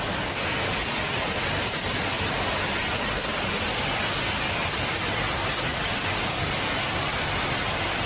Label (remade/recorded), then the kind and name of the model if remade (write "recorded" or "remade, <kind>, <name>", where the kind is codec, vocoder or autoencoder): recorded